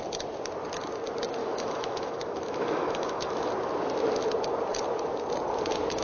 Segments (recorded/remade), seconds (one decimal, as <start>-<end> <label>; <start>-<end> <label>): 0.0-1.4 recorded; 1.4-3.5 remade; 3.5-6.0 recorded